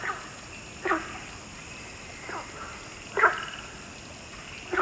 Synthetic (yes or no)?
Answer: no